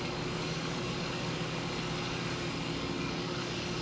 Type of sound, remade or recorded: remade